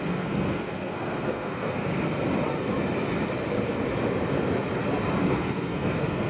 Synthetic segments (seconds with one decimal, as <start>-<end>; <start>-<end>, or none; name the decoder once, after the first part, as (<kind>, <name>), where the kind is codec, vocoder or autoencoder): 0.0-1.9 (codec, SNAC); 5.3-6.3